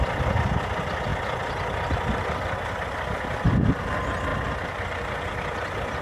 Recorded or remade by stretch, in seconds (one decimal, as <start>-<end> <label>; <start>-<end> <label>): 0.0-6.0 recorded